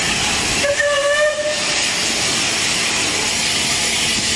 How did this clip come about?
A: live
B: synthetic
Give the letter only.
A